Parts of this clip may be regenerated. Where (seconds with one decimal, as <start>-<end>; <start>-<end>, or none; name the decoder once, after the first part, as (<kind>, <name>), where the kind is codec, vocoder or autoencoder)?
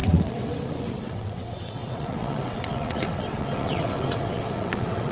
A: 0.0-5.1 (vocoder, WaveNeXt)